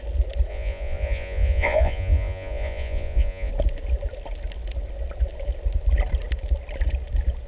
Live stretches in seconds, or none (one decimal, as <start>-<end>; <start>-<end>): 0.0-0.5; 3.5-7.5

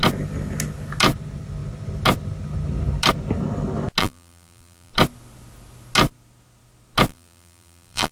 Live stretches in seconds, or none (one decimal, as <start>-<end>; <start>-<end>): 0.0-4.0; 4.9-7.1